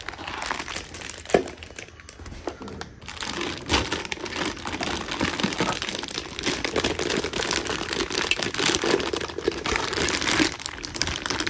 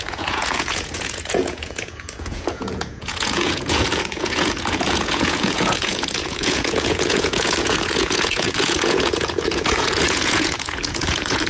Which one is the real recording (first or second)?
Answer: first